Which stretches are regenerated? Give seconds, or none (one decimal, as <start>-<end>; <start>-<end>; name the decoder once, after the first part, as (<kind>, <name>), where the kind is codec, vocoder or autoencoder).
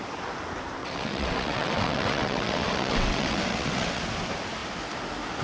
0.8-4.0 (vocoder, WaveNeXt)